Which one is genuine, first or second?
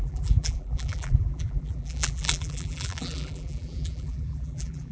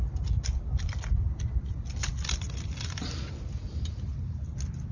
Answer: second